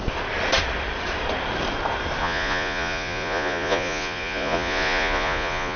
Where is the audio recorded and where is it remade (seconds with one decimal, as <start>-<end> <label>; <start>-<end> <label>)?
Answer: 0.0-2.2 recorded; 2.2-5.8 remade